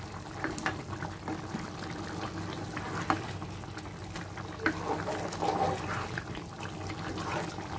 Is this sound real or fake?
real